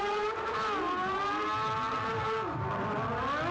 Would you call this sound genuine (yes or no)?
yes